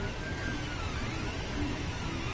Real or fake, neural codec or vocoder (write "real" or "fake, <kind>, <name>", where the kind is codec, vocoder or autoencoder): real